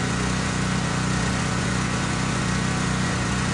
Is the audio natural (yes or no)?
no